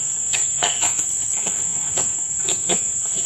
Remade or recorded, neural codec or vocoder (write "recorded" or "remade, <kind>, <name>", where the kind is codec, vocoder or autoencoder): remade, codec, SNAC